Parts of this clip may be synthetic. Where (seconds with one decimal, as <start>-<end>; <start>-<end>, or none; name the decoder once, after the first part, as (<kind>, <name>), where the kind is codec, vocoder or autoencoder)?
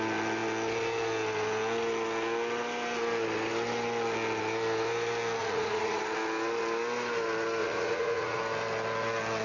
5.4-6.0 (vocoder, Vocos); 7.6-8.4